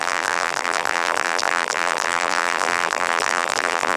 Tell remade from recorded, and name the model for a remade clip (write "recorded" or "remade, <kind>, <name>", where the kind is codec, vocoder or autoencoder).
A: remade, vocoder, BigVGAN v2